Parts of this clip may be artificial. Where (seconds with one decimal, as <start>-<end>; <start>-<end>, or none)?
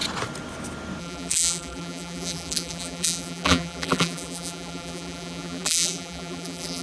1.0-6.8